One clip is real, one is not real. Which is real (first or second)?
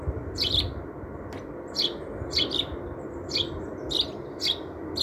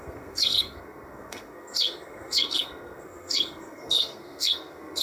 first